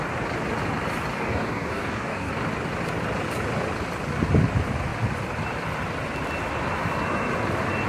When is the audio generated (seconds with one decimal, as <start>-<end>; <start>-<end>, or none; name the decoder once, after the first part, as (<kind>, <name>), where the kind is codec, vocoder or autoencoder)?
1.1-2.3 (codec, DAC)